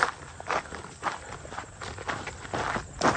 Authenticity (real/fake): real